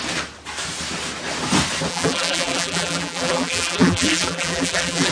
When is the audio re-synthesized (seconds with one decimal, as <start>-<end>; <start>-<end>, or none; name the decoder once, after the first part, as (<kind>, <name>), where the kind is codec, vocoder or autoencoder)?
1.9-5.1 (vocoder, BigVGAN v2)